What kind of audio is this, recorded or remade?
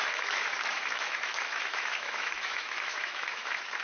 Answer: remade